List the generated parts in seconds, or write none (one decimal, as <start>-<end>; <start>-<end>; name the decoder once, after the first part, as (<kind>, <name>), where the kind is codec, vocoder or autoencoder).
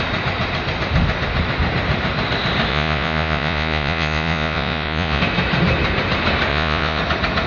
2.7-5.2 (vocoder, Vocos); 6.5-7.0